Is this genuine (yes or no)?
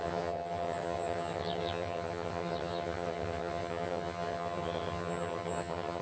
no